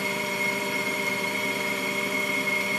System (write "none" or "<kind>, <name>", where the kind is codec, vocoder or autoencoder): vocoder, BigVGAN v2